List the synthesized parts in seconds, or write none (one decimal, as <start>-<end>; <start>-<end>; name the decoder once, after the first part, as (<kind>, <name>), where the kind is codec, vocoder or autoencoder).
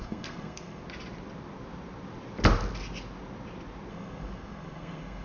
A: 0.0-0.8 (codec, SNAC); 3.9-5.2